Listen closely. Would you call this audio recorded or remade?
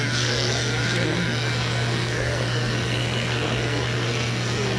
remade